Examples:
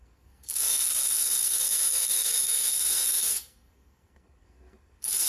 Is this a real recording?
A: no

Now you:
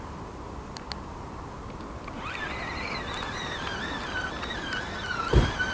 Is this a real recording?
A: yes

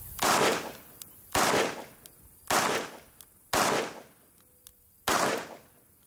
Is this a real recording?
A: yes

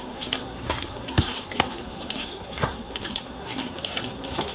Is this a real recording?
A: no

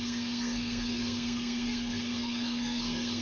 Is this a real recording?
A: no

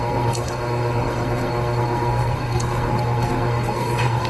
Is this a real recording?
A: no